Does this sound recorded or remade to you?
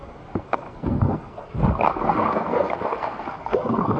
remade